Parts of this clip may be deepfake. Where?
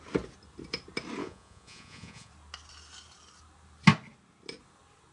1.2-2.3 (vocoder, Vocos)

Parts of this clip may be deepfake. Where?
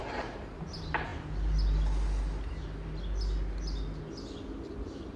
none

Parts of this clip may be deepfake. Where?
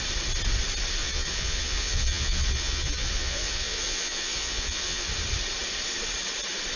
1.0-5.1 (vocoder, Vocos)